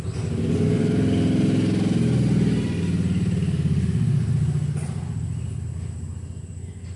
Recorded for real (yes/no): yes